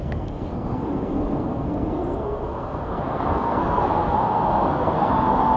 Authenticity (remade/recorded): remade